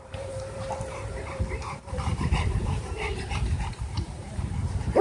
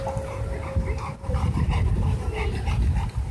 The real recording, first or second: second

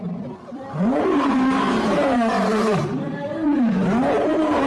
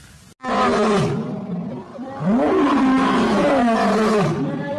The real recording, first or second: second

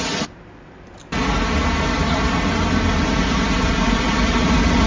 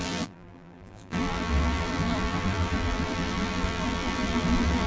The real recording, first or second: first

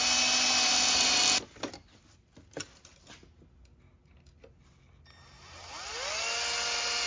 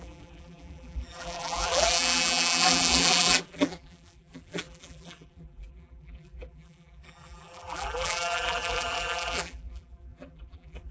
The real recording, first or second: first